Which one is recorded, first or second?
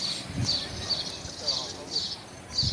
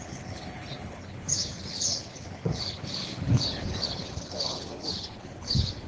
first